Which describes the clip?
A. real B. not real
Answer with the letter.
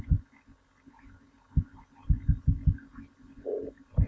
A